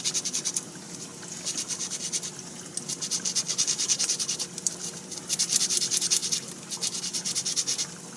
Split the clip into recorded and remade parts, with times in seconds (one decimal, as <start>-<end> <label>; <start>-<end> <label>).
0.0-1.1 remade; 1.1-4.1 recorded; 4.1-6.2 remade; 6.2-7.0 recorded; 7.0-8.2 remade